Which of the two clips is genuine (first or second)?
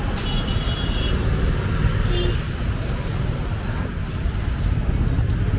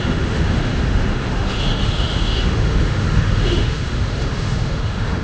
first